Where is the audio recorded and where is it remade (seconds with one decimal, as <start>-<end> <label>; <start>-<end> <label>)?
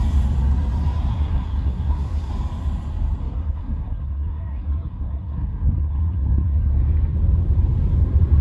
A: 0.0-1.1 recorded; 1.1-2.3 remade; 2.3-3.2 recorded; 3.2-6.7 remade; 6.7-8.4 recorded